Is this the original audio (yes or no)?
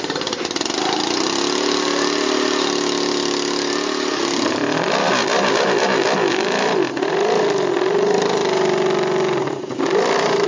no